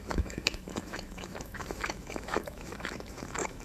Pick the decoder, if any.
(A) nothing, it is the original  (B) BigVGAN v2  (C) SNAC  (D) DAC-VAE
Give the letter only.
D